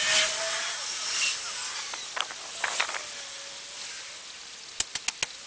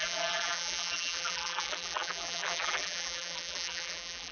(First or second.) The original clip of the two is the first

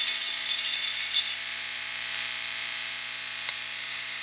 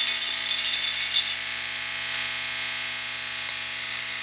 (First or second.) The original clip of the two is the second